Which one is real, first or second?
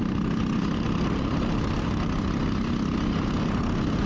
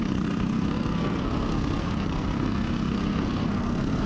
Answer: first